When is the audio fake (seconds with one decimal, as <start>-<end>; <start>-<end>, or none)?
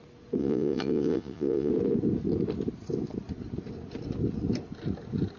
0.4-1.7